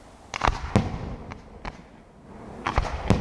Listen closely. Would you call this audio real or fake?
real